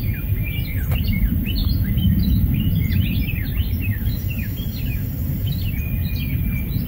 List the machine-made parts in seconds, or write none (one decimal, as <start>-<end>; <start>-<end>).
1.6-5.7